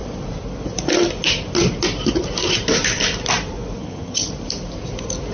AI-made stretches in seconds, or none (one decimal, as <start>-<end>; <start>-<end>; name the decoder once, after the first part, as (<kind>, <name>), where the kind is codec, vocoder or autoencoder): 3.8-4.3 (vocoder, HiFi-GAN)